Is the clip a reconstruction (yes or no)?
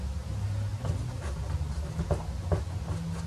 no